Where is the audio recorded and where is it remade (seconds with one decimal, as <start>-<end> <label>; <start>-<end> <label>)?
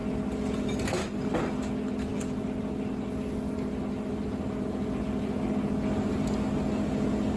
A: 0.0-7.4 recorded